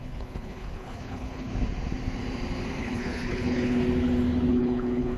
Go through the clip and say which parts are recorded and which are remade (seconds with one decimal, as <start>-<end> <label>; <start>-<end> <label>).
0.0-1.5 remade; 1.5-2.8 recorded; 2.8-3.8 remade; 3.8-4.5 recorded; 4.5-5.2 remade